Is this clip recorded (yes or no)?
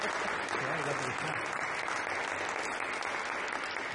yes